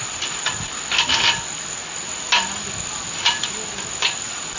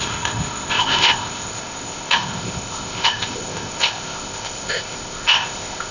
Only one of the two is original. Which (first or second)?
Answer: first